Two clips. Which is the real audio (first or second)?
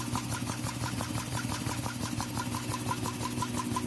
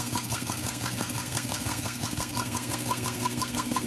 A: first